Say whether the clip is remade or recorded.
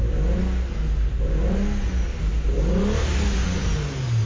recorded